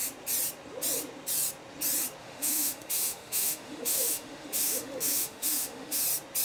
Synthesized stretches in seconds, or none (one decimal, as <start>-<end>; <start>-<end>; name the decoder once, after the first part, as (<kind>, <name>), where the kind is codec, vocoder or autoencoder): 2.2-6.0 (autoencoder, DAC-VAE)